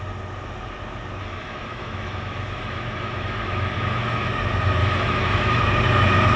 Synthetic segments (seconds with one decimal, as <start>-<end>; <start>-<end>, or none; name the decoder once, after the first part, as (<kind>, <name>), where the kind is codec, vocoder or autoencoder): 1.2-4.3 (autoencoder, DAC-VAE); 4.8-5.6